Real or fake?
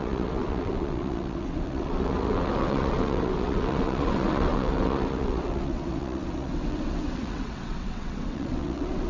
fake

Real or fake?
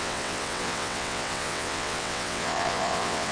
fake